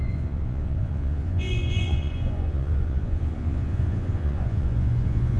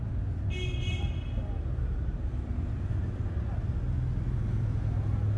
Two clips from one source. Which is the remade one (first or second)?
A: first